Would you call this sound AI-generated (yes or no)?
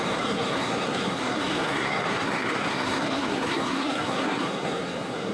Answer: yes